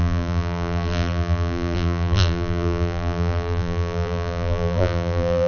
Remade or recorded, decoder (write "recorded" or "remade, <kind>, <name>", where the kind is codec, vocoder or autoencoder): remade, vocoder, BigVGAN v2